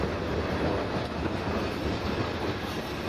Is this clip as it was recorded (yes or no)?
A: yes